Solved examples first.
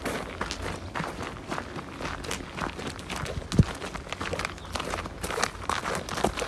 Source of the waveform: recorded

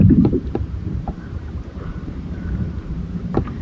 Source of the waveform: remade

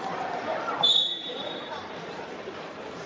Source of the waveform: remade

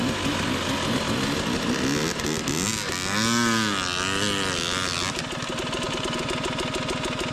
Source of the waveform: recorded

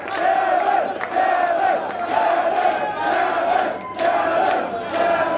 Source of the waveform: recorded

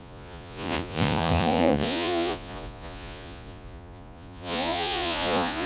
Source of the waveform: remade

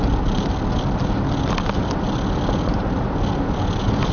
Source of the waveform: recorded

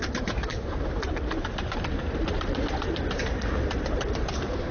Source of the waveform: remade